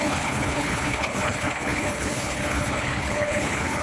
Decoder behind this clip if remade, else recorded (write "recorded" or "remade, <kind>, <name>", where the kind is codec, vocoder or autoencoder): remade, codec, HILCodec